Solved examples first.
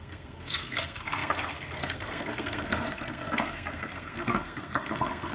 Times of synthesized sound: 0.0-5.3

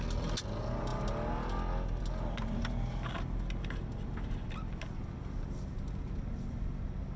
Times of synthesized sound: none

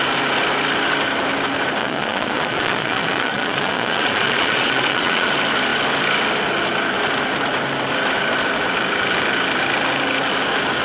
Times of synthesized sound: 1.8-5.3

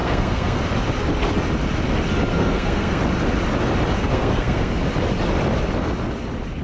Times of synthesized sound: 0.0-0.6; 2.3-3.0; 4.0-4.7

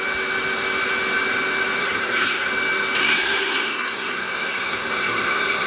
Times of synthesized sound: 1.8-2.5; 3.0-5.7

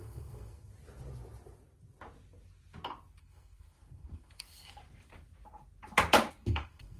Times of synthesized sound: 0.0-0.7; 3.2-4.8; 6.3-7.0